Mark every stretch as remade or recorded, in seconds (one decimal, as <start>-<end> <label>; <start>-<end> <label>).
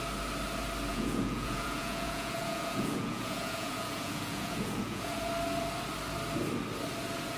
0.0-0.9 recorded; 0.9-5.3 remade; 5.3-7.4 recorded